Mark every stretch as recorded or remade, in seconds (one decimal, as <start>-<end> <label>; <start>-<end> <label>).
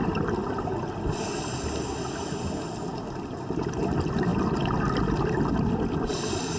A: 0.0-4.3 recorded; 4.3-6.6 remade